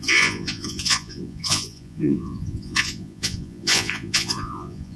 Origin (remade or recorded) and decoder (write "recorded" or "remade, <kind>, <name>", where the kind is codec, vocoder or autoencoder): remade, vocoder, Vocos